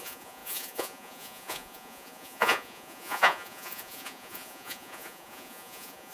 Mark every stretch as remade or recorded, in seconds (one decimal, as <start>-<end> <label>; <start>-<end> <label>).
0.0-6.1 remade